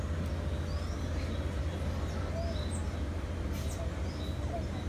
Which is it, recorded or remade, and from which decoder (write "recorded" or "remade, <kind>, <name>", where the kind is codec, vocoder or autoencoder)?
recorded